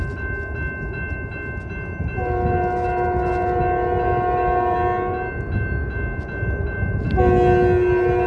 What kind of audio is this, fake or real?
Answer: real